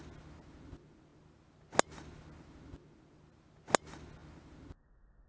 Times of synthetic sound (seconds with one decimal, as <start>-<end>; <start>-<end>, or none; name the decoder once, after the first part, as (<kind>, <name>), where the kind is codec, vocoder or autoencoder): none